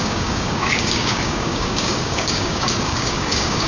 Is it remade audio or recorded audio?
remade